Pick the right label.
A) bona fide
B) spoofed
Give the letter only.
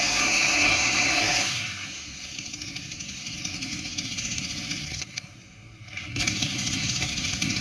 B